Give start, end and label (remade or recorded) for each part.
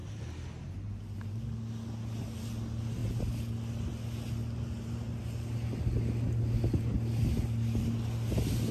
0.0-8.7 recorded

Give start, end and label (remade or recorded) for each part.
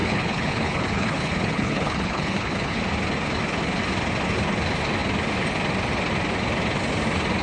0.0-2.8 remade; 2.8-7.4 recorded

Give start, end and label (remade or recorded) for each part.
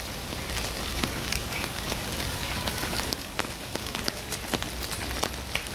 0.0-0.9 recorded; 0.9-4.3 remade; 4.3-5.7 recorded